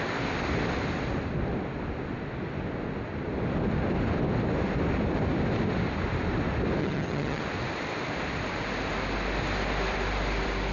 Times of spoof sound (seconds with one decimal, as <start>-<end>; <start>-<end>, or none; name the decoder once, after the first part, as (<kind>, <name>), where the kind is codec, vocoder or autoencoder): 6.8-7.4 (vocoder, HiFi-GAN)